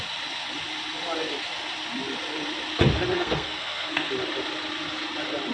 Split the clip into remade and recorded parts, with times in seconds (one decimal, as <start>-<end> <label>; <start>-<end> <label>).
0.0-3.1 recorded; 3.1-4.1 remade; 4.1-5.5 recorded